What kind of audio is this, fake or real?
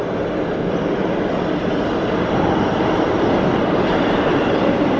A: fake